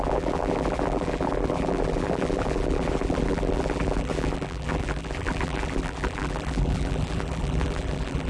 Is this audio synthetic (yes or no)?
yes